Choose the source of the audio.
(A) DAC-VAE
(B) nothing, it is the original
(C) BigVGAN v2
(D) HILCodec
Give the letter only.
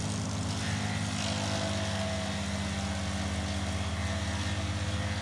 B